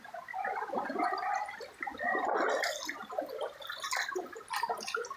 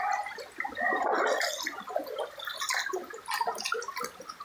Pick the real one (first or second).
second